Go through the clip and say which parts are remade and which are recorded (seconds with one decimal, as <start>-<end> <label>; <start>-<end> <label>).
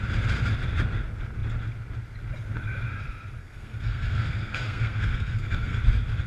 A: 0.0-3.4 recorded; 3.4-5.8 remade; 5.8-6.3 recorded